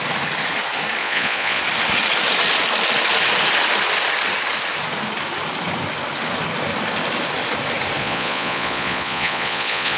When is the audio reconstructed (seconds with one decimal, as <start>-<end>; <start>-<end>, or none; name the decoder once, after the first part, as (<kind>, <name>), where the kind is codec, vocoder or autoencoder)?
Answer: 1.0-1.6 (vocoder, Vocos); 8.0-10.0

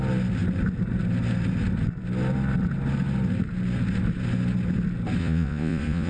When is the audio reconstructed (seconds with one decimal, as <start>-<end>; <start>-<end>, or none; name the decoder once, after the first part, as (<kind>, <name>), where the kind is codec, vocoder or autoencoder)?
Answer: 5.2-6.1 (vocoder, Vocos)

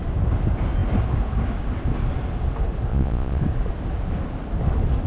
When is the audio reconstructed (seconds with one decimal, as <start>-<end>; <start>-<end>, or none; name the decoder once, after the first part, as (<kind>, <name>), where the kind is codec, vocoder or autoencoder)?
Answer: 2.9-3.4 (vocoder, Vocos)